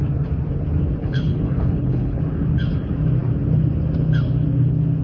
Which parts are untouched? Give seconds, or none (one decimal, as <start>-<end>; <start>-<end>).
0.0-1.0; 2.2-5.0